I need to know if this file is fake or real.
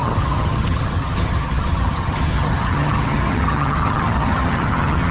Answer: fake